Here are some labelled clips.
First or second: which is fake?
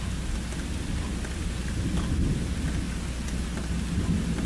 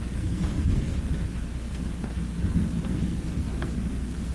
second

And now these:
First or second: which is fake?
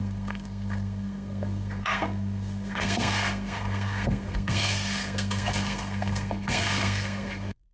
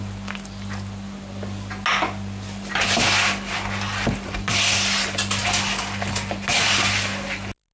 first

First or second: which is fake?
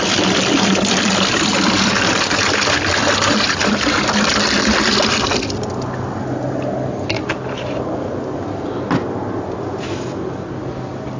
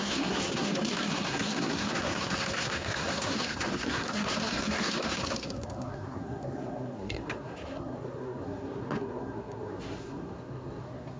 second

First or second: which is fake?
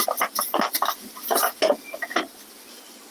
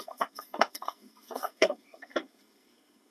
second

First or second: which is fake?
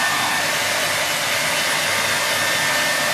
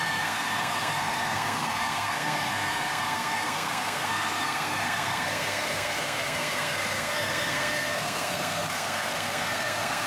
second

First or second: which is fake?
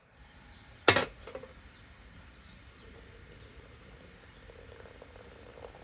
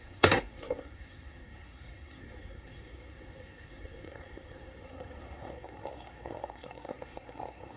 second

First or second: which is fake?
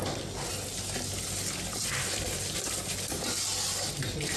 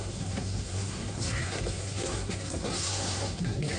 second